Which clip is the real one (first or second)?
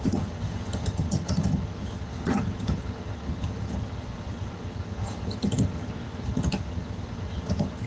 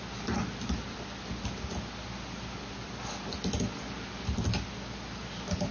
second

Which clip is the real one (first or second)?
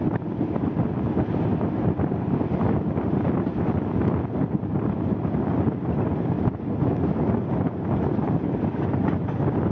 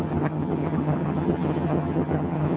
first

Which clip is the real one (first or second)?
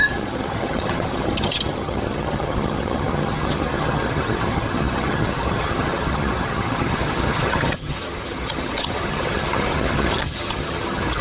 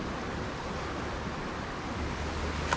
second